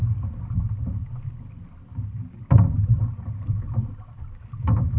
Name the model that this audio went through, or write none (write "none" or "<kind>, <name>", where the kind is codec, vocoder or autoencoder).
none